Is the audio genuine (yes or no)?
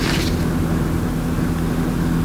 yes